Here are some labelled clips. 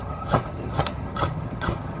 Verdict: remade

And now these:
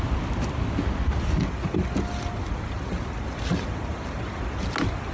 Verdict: recorded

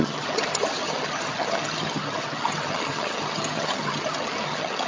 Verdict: remade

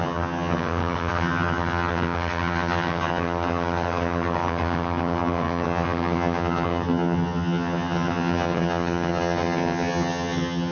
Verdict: remade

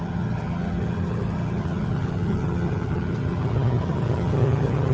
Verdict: remade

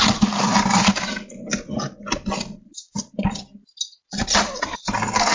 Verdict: recorded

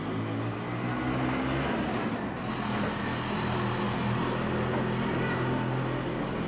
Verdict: recorded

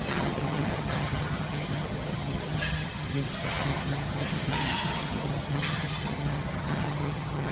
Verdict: remade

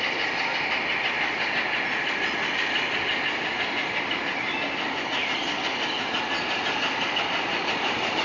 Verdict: recorded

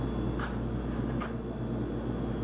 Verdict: recorded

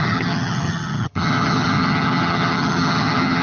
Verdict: remade